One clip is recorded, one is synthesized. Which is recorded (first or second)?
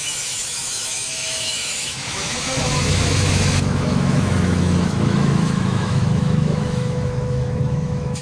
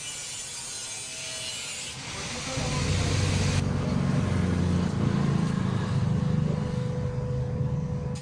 second